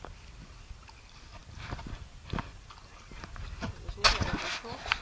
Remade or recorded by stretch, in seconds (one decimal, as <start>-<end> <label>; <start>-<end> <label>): 0.0-5.0 recorded